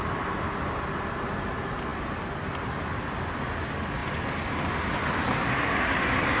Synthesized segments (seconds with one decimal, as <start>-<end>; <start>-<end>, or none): none